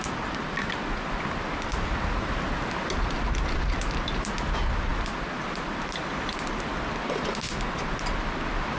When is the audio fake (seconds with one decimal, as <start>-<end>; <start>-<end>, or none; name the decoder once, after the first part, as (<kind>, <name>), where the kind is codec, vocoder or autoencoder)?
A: none